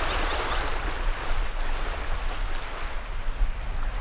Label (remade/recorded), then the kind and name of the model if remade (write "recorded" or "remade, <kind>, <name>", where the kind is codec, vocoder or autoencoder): recorded